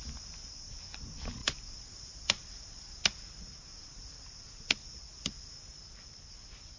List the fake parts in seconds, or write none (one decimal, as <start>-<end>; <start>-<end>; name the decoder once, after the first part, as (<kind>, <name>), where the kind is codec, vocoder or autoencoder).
none